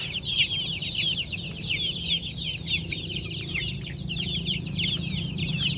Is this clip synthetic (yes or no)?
no